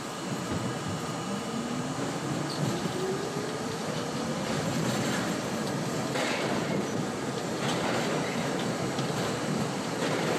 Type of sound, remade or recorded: remade